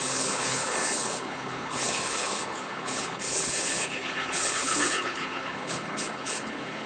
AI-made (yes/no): yes